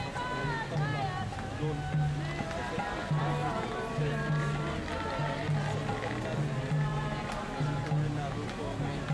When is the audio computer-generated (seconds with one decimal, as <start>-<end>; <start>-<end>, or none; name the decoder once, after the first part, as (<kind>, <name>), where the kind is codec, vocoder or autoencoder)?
none